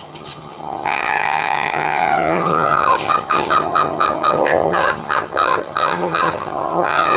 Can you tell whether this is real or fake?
fake